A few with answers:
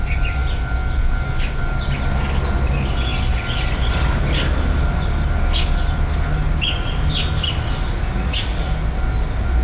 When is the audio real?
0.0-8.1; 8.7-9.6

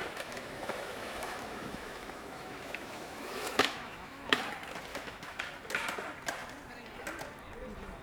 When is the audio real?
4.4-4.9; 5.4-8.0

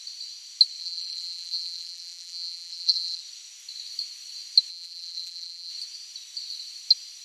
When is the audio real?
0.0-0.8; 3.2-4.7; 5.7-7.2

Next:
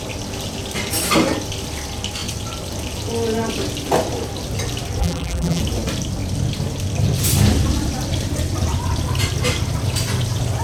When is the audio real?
0.0-5.0; 5.6-10.6

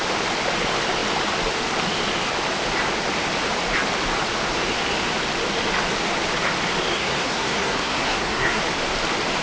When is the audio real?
0.0-6.9; 8.6-9.4